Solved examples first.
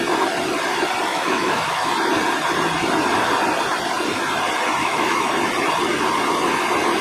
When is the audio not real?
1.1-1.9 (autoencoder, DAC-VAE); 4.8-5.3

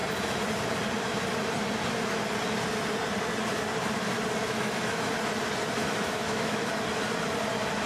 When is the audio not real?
4.4-5.1 (autoencoder, DAC-VAE); 5.8-6.7

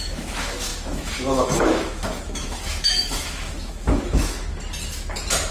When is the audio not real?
0.0-4.5 (autoencoder, DAC-VAE)

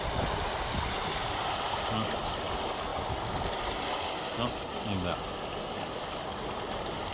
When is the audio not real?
none

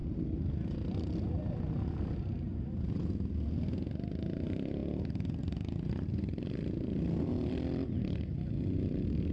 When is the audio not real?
none